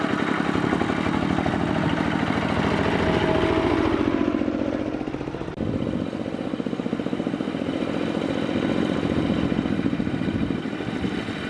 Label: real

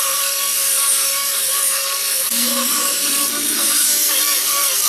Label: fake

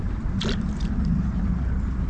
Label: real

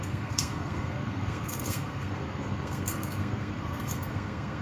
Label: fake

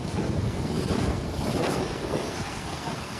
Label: fake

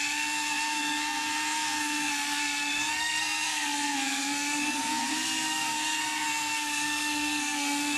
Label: fake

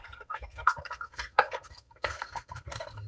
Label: fake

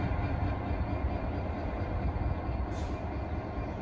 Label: real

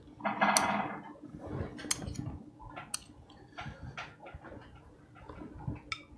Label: real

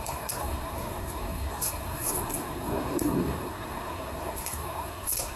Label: fake